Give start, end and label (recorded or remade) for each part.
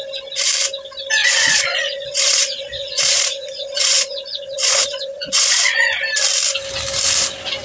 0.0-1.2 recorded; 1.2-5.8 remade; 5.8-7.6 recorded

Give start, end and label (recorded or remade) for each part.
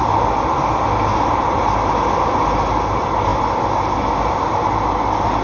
0.0-5.4 recorded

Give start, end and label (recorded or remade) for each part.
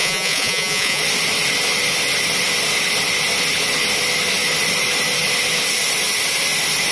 0.0-1.0 remade; 1.0-6.9 recorded